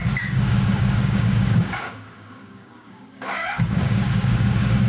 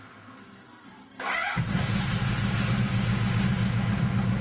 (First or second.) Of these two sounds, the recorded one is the second